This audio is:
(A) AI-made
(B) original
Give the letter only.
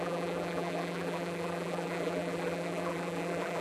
A